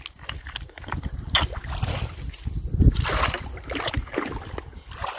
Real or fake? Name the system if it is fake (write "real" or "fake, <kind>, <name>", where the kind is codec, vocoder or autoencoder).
real